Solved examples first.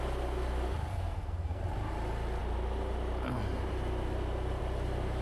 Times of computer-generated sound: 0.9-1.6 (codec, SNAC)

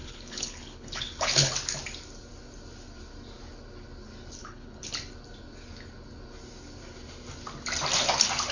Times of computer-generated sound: 0.0-1.5 (codec, HILCodec); 4.4-5.0

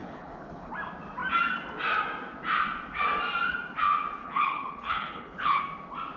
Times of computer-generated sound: 0.0-0.7 (codec, HILCodec); 4.2-5.6

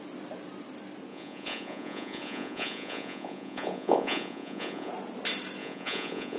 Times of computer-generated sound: 1.1-4.9 (vocoder, Vocos); 5.6-6.4

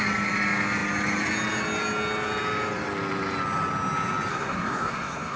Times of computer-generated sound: 4.3-5.4 (codec, SNAC)